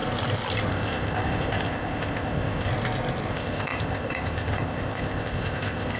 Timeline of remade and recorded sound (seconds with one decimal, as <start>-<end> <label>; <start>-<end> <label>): 0.0-0.7 recorded; 0.7-2.7 remade; 2.7-3.3 recorded; 3.3-6.0 remade

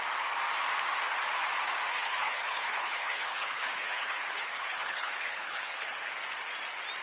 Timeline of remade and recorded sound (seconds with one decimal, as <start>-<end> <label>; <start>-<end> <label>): 0.0-1.9 recorded; 1.9-6.1 remade; 6.1-7.0 recorded

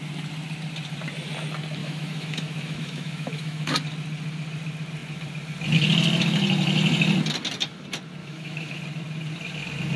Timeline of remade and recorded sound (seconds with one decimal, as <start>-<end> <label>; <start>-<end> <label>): 0.0-1.8 recorded; 1.8-3.7 remade; 3.7-8.2 recorded; 8.2-8.8 remade; 8.8-10.0 recorded

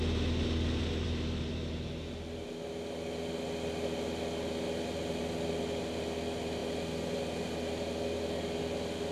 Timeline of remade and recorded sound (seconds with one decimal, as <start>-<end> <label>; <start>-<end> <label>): 0.0-9.1 recorded

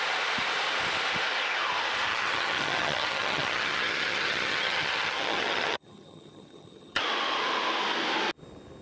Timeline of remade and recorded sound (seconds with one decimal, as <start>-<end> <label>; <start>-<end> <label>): 0.0-2.1 recorded; 2.1-7.0 remade; 7.0-8.8 recorded

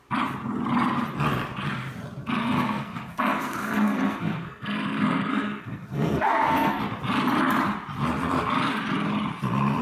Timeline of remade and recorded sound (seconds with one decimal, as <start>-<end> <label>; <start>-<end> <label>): 0.0-2.4 recorded; 2.4-6.8 remade; 6.8-9.8 recorded